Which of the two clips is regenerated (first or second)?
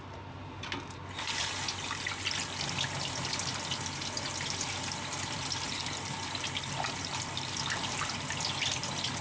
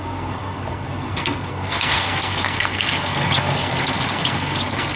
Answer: second